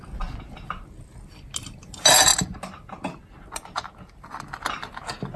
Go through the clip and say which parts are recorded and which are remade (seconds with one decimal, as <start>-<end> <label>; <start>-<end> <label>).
0.0-5.4 recorded